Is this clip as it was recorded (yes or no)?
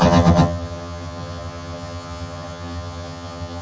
no